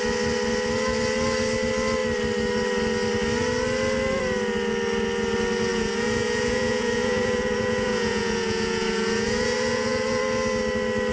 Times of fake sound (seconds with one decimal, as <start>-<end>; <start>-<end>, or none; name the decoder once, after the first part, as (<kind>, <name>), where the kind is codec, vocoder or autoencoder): 5.7-10.2 (vocoder, Vocos)